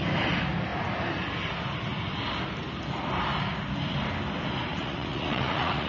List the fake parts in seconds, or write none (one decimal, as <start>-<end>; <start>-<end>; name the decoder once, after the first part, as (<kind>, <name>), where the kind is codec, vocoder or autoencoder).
4.7-5.9 (vocoder, Vocos)